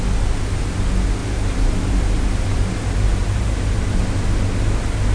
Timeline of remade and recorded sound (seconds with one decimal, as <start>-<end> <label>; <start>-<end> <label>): 0.0-1.2 recorded; 1.2-2.6 remade; 2.6-3.2 recorded; 3.2-4.0 remade; 4.0-5.1 recorded

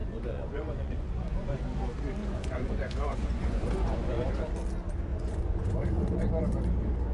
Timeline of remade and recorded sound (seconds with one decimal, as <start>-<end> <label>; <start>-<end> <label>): 0.0-1.6 remade; 1.6-2.2 recorded; 2.2-4.3 remade; 4.3-5.1 recorded; 5.1-6.2 remade; 6.2-7.1 recorded

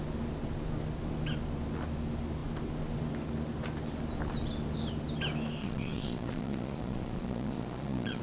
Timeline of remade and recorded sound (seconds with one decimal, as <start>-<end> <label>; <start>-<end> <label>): 0.0-5.6 recorded; 5.6-8.2 remade

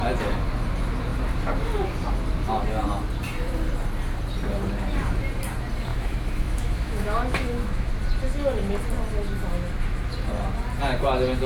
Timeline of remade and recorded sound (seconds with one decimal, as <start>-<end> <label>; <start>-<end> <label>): 0.0-5.9 recorded; 5.9-7.9 remade; 7.9-11.5 recorded

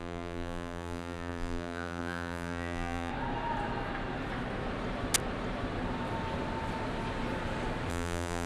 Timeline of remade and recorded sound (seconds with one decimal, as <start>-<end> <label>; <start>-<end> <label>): 0.0-3.1 remade; 3.1-7.9 recorded; 7.9-8.5 remade

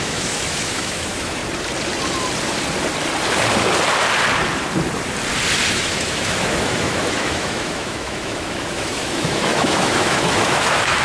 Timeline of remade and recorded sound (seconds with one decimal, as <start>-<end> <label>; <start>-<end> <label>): 0.0-1.4 remade; 1.4-5.7 recorded; 5.7-11.0 remade

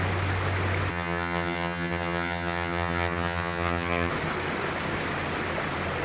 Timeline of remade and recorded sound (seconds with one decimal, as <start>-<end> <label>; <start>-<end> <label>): 0.0-0.9 recorded; 0.9-4.1 remade; 4.1-6.0 recorded